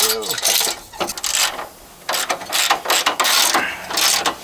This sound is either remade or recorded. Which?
recorded